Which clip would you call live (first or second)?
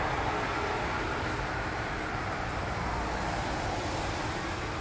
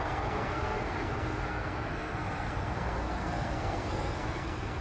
first